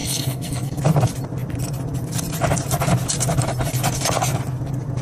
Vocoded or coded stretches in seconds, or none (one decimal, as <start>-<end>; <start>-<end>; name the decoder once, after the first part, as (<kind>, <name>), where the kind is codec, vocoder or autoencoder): 0.0-0.8 (codec, SNAC)